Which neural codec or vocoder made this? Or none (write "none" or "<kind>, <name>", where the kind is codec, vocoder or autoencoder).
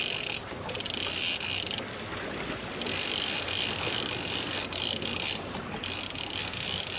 none